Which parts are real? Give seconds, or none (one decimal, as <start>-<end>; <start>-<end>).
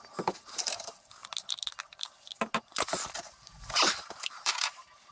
1.2-2.6